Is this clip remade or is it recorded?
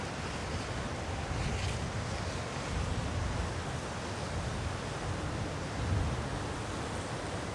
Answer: recorded